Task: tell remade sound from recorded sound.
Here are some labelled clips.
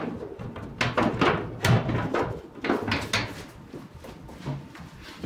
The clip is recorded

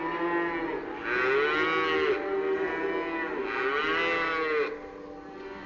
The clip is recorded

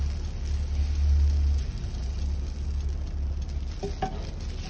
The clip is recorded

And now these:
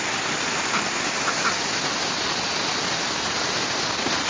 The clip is recorded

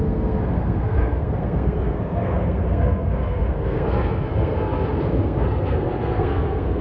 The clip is remade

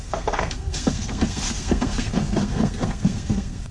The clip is remade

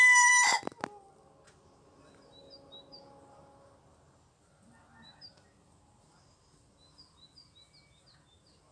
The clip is recorded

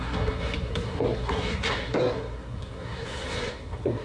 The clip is remade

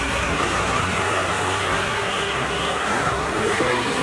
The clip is remade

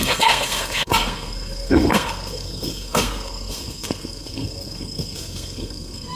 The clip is remade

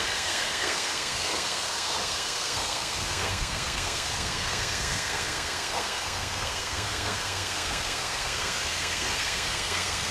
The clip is remade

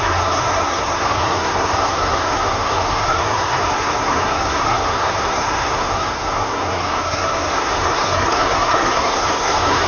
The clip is remade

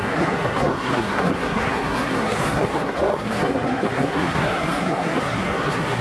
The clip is remade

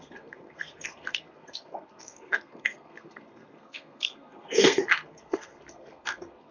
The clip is remade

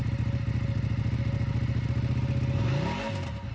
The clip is recorded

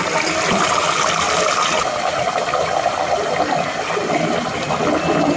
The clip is recorded